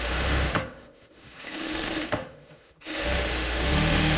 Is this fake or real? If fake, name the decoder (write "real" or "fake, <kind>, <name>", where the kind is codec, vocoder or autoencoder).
fake, autoencoder, DAC-VAE